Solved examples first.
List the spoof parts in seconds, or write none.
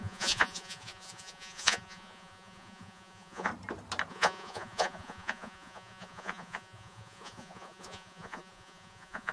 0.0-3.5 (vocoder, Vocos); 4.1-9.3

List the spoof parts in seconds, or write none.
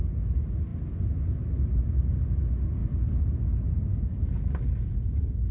0.7-2.1 (vocoder, BigVGAN v2); 2.8-3.3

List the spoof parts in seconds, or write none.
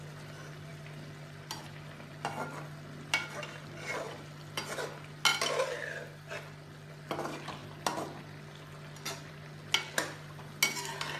none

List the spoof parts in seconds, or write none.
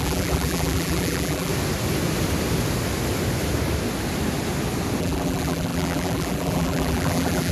0.0-1.5 (vocoder, BigVGAN v2); 5.0-7.5